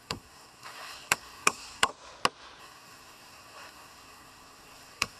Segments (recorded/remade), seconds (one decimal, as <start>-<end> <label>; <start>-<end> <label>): 0.0-1.9 remade; 1.9-2.6 recorded; 2.6-5.2 remade